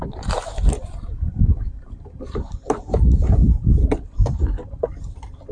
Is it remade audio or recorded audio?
remade